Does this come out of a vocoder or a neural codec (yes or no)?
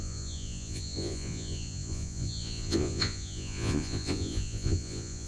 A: yes